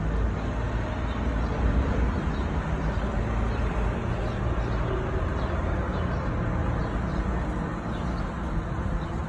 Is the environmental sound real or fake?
real